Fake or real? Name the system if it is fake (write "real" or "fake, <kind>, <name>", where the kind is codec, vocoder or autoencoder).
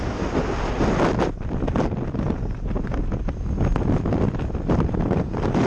real